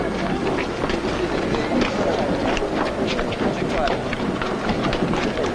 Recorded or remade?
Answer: recorded